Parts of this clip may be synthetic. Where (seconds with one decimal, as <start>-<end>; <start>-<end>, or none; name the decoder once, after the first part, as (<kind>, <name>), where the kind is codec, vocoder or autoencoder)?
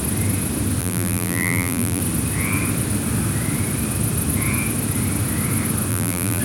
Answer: 0.8-2.0 (vocoder, BigVGAN v2); 5.9-6.4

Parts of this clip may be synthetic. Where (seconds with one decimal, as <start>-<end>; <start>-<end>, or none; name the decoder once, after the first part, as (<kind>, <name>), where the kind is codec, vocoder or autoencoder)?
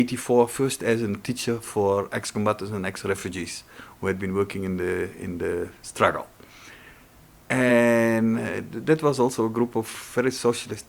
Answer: none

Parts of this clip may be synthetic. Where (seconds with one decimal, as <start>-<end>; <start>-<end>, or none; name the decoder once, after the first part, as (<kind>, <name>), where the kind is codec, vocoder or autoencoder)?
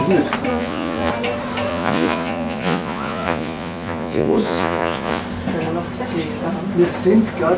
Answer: 0.5-1.1 (vocoder, Vocos); 1.7-5.2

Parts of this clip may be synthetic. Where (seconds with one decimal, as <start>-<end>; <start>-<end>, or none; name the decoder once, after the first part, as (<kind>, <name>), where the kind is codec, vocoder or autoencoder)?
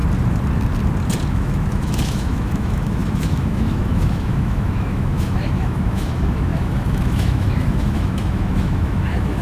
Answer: 1.3-9.4 (autoencoder, DAC-VAE)